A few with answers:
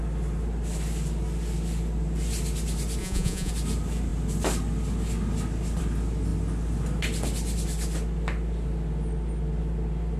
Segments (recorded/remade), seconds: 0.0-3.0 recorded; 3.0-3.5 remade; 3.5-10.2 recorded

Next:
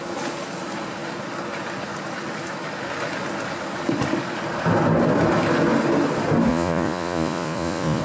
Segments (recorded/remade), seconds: 0.0-6.5 recorded; 6.5-8.0 remade

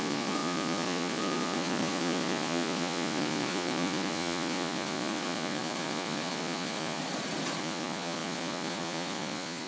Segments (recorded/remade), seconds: 0.0-7.0 remade; 7.0-7.6 recorded; 7.6-9.7 remade

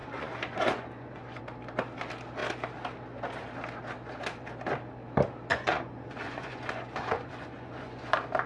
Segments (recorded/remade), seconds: 0.0-1.4 remade; 1.4-5.5 recorded; 5.5-8.1 remade; 8.1-8.5 recorded

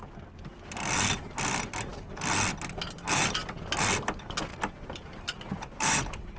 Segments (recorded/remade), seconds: 0.0-6.4 recorded

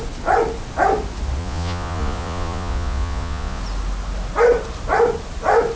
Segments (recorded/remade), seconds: 0.0-1.4 recorded; 1.4-3.6 remade; 3.6-5.8 recorded

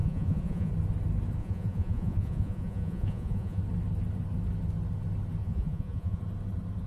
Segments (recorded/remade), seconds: 0.0-0.7 remade; 0.7-1.4 recorded; 1.4-3.6 remade; 3.6-5.4 recorded; 5.4-6.2 remade; 6.2-6.9 recorded

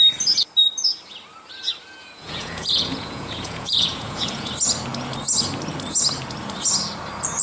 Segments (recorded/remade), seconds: 0.0-2.0 recorded; 2.0-4.5 remade; 4.5-7.4 recorded